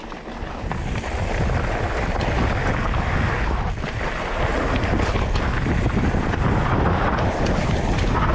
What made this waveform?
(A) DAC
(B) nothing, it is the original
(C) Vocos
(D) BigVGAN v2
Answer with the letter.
B